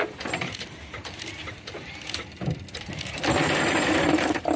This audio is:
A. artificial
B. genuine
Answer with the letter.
A